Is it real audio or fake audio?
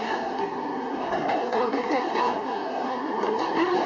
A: fake